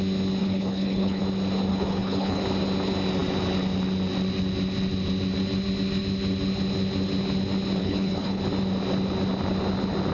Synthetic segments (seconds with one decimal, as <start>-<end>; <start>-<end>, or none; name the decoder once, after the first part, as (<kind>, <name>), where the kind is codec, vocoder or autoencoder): 0.4-1.2 (codec, HILCodec); 1.7-2.4; 7.8-8.4